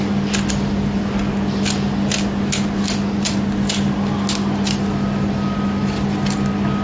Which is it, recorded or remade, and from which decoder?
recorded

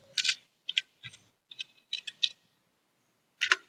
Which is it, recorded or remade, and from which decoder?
recorded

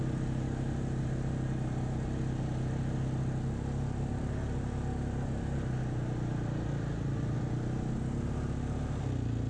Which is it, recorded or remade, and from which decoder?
recorded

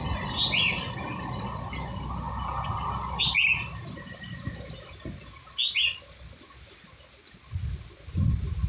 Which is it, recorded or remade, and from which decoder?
recorded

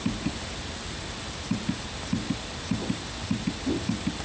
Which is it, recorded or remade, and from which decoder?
recorded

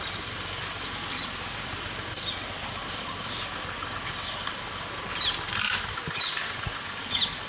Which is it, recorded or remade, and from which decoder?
recorded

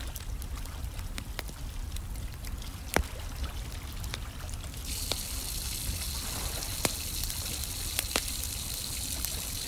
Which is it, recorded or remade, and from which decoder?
recorded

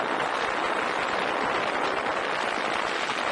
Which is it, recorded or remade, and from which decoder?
recorded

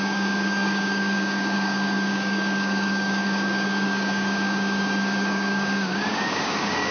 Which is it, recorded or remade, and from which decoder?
remade, codec, DAC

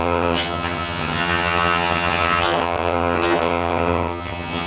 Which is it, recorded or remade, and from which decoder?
remade, vocoder, HiFi-GAN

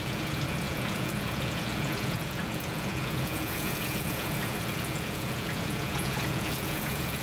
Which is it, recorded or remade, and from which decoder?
remade, vocoder, Vocos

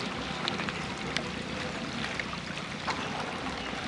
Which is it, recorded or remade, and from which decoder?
recorded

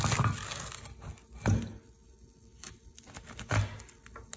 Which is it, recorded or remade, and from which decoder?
recorded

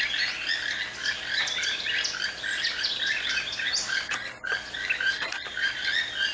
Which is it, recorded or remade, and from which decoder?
recorded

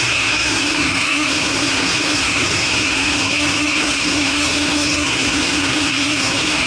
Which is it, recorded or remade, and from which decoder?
remade, codec, SNAC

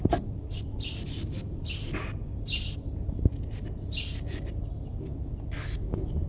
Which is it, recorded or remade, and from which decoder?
recorded